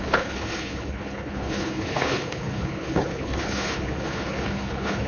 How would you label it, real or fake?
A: fake